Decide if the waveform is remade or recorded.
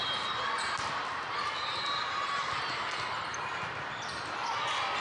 recorded